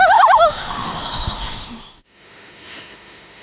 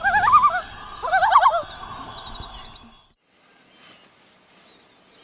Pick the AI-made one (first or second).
first